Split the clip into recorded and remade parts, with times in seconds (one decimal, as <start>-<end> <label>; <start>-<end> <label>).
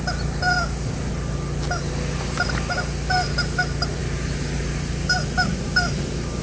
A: 0.0-6.4 recorded